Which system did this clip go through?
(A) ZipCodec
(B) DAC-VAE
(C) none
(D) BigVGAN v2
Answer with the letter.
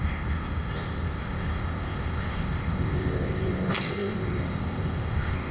A